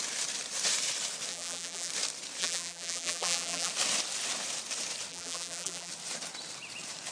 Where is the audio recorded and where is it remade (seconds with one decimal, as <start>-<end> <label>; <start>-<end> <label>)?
0.0-1.3 recorded; 1.3-1.9 remade; 1.9-2.4 recorded; 2.4-3.7 remade; 3.7-5.1 recorded; 5.1-5.9 remade; 5.9-7.1 recorded